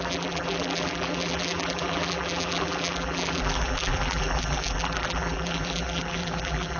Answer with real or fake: fake